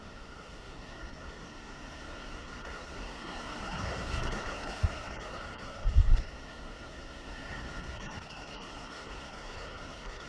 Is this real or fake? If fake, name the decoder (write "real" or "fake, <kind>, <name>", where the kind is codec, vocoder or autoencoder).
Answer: fake, codec, SNAC